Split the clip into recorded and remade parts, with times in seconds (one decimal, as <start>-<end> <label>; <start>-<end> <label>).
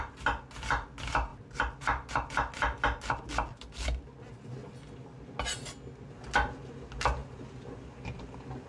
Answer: 0.0-8.7 recorded